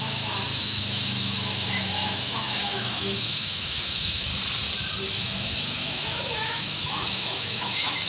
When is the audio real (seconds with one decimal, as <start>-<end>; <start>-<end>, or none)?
4.3-5.2